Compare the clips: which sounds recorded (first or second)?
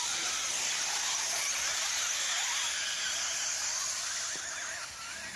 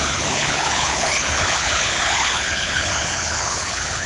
first